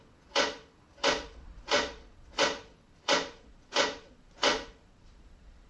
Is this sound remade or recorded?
remade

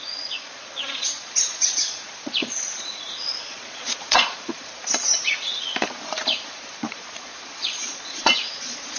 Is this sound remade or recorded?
remade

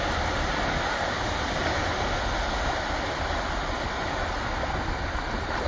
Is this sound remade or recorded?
recorded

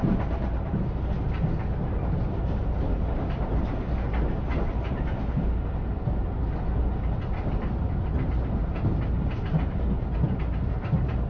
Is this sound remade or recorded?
recorded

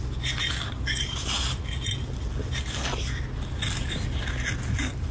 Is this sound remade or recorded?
recorded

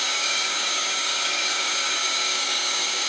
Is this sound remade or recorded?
remade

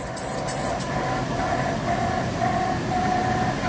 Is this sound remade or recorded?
remade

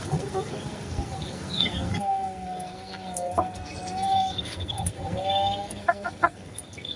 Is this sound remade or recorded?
remade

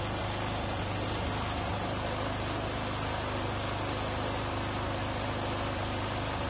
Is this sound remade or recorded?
recorded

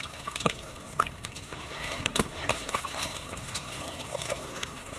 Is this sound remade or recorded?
remade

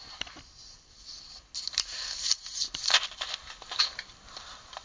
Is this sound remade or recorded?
recorded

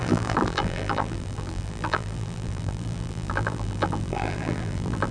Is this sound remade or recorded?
remade